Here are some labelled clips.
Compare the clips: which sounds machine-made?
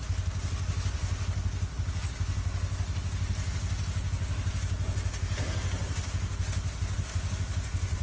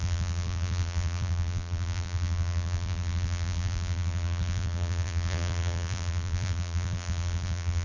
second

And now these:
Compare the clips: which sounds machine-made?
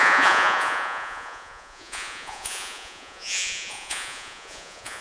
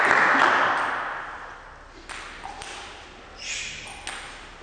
first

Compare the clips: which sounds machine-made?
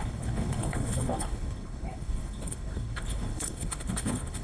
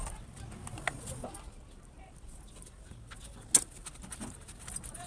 first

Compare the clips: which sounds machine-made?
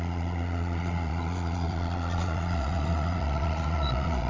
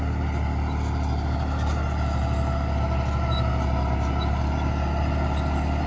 first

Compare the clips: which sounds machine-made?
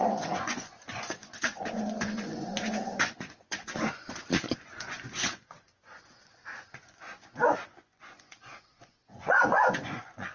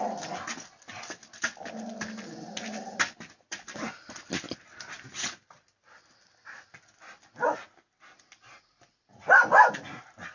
first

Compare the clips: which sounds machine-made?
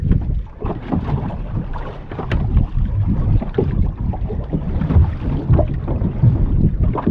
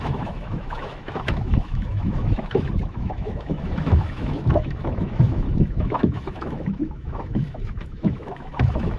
second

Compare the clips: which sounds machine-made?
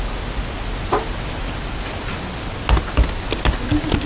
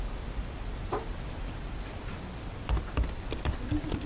second